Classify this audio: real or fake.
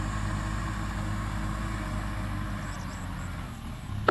real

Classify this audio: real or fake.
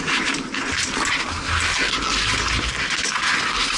real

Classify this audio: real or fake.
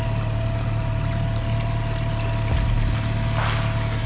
real